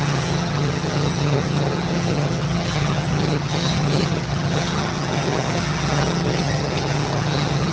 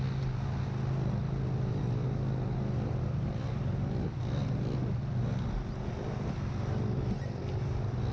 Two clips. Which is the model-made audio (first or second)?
first